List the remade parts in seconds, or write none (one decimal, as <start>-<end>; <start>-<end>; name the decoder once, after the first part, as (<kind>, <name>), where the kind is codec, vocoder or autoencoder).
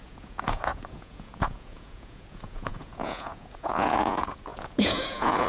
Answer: 0.0-5.5 (vocoder, Vocos)